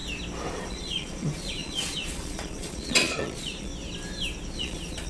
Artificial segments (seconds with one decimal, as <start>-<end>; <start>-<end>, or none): 0.5-3.7; 4.6-5.1